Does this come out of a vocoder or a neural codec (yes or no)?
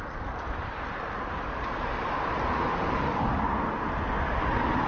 no